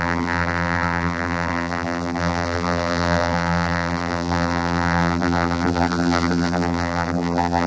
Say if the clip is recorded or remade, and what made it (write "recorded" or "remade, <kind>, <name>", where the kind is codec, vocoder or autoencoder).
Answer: remade, vocoder, BigVGAN v2